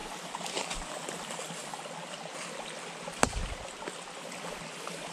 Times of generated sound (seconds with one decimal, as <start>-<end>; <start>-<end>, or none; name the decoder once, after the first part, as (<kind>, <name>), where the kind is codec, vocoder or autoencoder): none